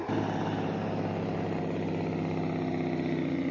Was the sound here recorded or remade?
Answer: recorded